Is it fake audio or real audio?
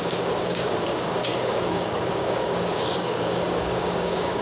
fake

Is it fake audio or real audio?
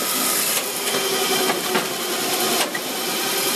real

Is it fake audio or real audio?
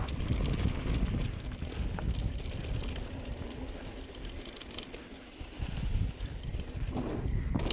real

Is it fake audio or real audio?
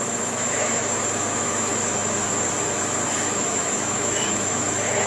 fake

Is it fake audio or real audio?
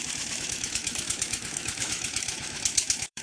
fake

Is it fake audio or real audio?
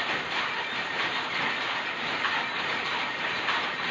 real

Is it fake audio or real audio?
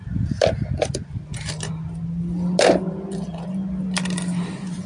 real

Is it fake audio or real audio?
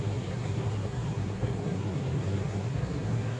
fake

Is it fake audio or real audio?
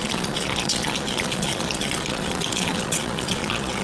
fake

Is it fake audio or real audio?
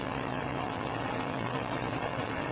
fake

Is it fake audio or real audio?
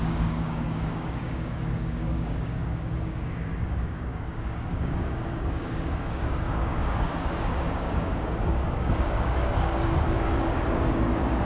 fake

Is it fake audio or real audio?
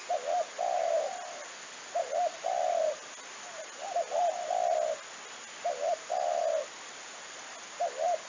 real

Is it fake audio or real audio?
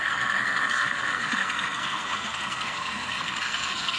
fake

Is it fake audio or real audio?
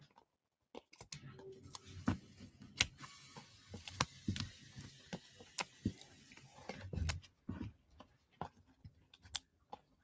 real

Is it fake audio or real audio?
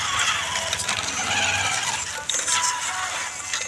real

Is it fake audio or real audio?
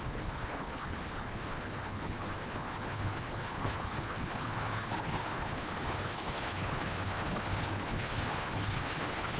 fake